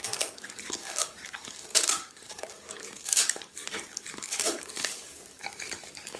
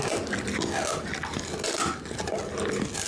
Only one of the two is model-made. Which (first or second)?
first